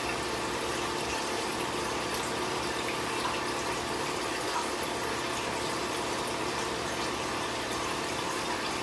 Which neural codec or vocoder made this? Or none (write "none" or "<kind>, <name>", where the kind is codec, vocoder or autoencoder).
none